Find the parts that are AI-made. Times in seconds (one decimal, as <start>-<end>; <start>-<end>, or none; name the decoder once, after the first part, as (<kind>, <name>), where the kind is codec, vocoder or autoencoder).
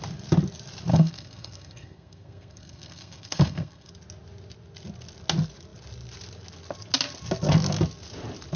0.9-3.9 (codec, SNAC)